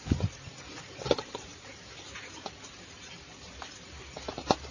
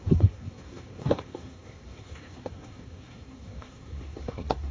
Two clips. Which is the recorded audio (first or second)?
first